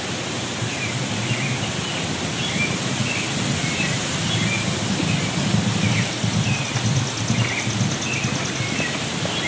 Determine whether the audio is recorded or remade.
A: recorded